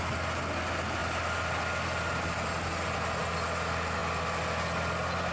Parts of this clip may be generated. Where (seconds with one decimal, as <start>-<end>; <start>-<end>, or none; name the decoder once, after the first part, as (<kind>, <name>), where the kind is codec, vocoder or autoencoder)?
none